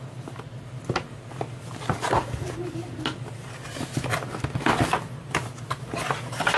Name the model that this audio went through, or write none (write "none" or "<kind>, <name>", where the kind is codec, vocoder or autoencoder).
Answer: none